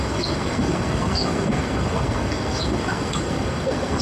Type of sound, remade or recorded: remade